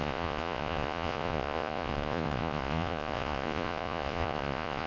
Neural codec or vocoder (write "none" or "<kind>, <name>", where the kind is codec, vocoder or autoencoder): vocoder, Vocos